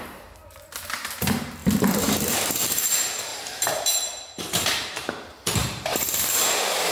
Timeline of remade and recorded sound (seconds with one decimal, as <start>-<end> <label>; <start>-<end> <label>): 0.0-0.4 remade; 0.4-1.2 recorded; 1.2-1.6 remade; 1.6-2.3 recorded; 2.3-6.9 remade